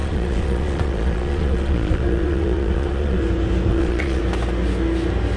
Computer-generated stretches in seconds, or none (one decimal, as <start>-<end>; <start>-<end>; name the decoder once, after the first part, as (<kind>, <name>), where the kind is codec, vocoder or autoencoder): 0.0-3.2 (vocoder, Vocos); 3.7-4.2